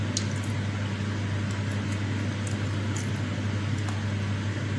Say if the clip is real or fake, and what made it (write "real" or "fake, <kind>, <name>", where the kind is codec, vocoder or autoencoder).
real